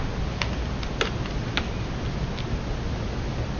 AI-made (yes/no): no